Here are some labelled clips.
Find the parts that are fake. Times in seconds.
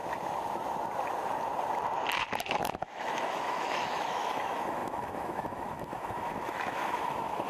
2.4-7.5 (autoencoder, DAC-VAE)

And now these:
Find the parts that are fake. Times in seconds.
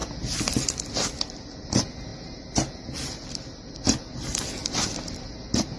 none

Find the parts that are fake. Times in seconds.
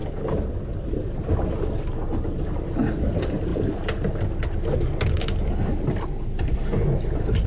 none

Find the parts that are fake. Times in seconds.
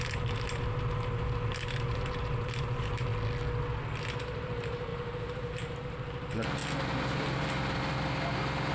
0.0-3.1 (vocoder, BigVGAN v2); 4.2-6.6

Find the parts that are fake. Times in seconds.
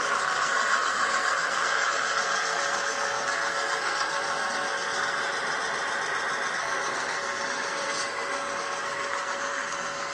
0.0-5.2 (codec, SNAC); 6.5-10.1